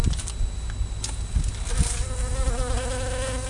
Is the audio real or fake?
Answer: real